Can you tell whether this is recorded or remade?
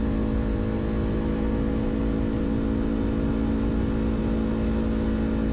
recorded